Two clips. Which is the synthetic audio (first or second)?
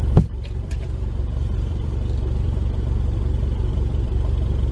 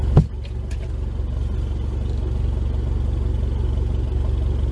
first